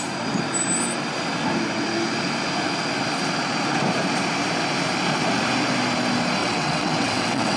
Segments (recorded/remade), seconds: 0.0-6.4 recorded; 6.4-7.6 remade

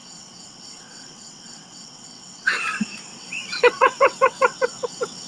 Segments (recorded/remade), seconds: 0.0-2.6 remade; 2.6-3.1 recorded; 3.1-5.3 remade